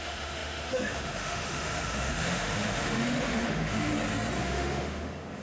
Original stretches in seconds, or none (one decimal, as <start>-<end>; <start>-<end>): 3.9-4.4